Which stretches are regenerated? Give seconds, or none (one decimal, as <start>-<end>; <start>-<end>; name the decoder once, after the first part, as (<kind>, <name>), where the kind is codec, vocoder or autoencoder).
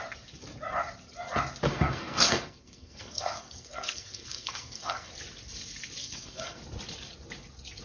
1.7-5.1 (codec, SNAC); 6.0-6.6